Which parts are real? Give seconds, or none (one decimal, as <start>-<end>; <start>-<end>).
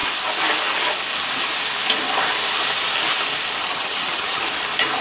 0.0-3.6; 4.4-5.0